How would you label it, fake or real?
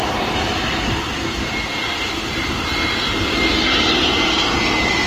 real